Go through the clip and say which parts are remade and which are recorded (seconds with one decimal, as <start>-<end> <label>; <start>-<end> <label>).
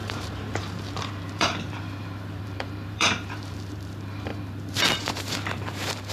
0.0-6.1 remade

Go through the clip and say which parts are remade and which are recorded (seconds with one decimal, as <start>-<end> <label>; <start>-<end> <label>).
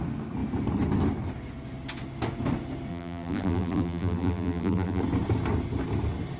0.0-2.9 recorded; 2.9-5.0 remade; 5.0-6.4 recorded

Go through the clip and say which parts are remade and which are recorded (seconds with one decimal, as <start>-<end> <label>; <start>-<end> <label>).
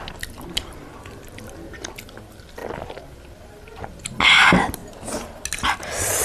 0.0-6.2 recorded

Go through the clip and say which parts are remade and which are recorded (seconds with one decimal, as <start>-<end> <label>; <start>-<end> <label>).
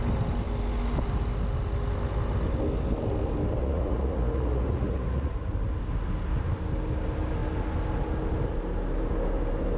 0.0-3.6 recorded; 3.6-5.5 remade; 5.5-9.8 recorded